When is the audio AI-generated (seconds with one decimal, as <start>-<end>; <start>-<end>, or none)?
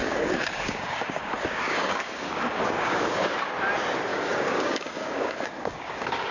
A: 0.0-3.5; 4.1-6.3